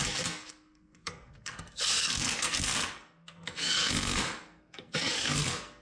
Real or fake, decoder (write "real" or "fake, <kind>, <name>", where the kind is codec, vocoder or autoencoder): fake, codec, SNAC